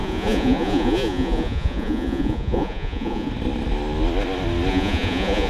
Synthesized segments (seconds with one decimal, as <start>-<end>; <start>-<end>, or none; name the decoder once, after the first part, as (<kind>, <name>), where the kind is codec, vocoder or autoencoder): 0.0-3.3 (vocoder, Vocos); 4.7-5.5